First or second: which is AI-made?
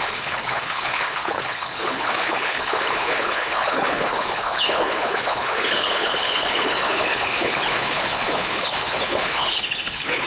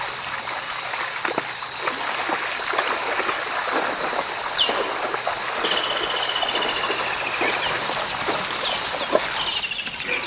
first